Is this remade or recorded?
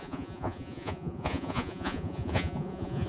remade